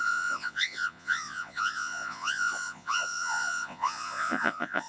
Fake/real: fake